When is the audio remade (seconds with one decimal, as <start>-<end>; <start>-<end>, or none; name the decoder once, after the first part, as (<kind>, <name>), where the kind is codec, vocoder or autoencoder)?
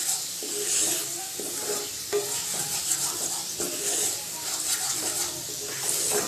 none